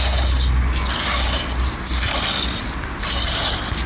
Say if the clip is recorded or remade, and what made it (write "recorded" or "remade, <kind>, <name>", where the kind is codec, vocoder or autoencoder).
recorded